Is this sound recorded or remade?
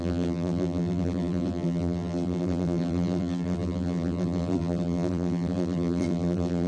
remade